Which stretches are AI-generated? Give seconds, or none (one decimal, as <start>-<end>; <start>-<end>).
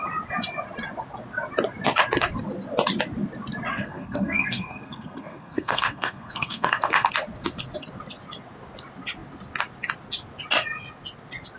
3.7-7.1